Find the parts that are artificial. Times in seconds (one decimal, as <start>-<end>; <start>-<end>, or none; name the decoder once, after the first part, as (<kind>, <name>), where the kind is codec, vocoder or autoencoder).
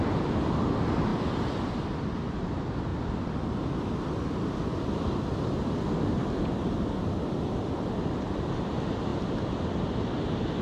none